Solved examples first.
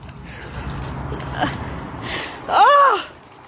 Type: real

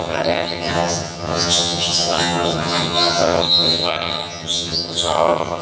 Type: fake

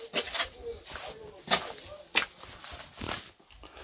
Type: real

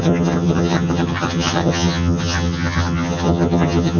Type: fake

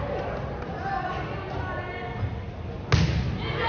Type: real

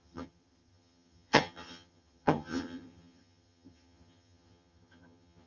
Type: fake